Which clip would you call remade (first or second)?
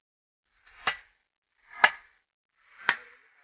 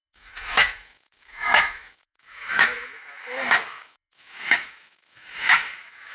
second